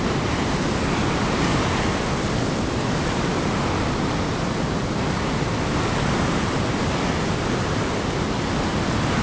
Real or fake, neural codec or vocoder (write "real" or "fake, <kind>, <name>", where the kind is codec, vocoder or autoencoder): real